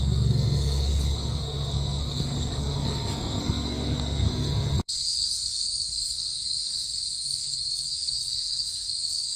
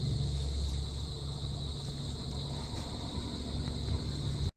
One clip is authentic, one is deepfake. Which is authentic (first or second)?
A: second